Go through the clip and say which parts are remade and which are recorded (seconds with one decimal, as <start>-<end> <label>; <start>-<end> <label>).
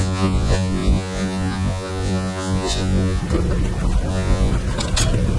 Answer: 0.0-3.2 remade; 3.2-4.1 recorded; 4.1-4.5 remade; 4.5-5.4 recorded